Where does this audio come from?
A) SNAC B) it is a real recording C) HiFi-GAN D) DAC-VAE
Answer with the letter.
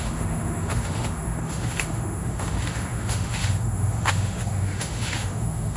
D